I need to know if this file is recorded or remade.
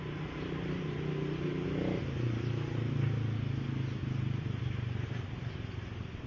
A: recorded